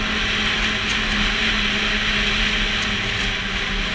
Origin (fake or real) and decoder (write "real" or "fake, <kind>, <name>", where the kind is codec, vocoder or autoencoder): real